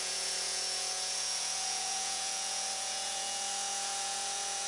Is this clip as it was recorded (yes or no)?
no